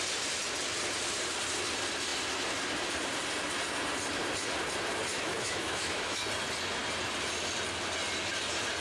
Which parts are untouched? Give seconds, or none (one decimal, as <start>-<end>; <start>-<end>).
0.0-5.1; 6.2-8.8

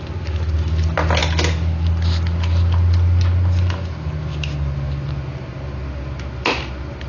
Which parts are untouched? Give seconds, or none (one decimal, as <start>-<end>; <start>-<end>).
0.0-7.1

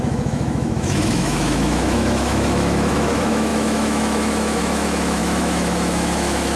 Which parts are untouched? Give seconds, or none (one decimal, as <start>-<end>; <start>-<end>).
none

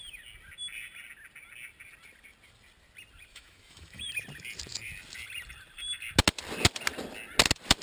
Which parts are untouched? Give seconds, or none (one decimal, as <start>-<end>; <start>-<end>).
0.0-3.3; 4.1-7.8

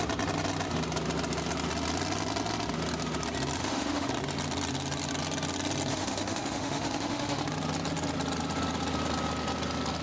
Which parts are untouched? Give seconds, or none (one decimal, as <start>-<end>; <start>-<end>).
0.0-3.6; 4.1-5.9; 7.4-10.0